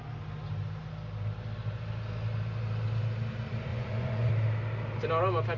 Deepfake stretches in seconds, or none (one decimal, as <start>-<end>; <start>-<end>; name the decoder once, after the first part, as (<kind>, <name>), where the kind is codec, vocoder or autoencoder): 3.7-4.3 (vocoder, Vocos)